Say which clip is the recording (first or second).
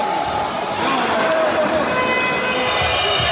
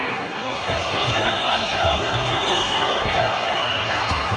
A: first